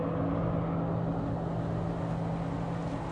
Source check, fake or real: real